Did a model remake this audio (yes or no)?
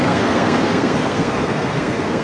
yes